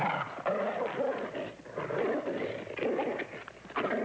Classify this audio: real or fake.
real